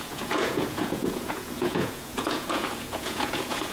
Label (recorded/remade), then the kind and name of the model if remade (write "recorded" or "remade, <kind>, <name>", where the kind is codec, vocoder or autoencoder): remade, vocoder, Vocos